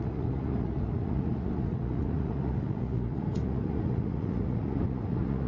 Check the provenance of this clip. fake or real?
fake